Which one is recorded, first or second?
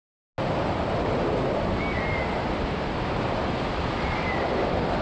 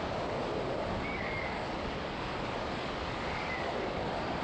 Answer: first